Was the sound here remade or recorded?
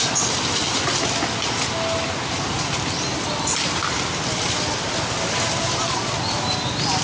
recorded